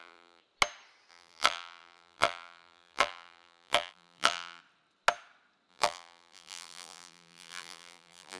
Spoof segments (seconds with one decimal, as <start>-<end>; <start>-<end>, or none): 0.0-0.4; 1.1-4.6; 5.7-8.4